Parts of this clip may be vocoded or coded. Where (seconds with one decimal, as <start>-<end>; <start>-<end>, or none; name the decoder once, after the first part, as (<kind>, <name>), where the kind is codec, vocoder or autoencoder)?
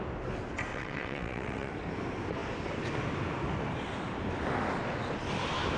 0.7-1.7 (vocoder, WaveNeXt)